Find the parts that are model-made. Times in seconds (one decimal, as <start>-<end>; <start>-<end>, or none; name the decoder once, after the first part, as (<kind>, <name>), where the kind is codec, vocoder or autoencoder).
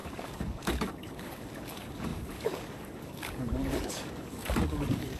0.0-5.2 (codec, DAC)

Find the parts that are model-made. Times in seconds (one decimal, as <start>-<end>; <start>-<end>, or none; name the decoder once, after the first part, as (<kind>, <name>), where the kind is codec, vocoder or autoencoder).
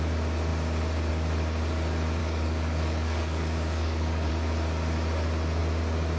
2.2-4.3 (codec, DAC)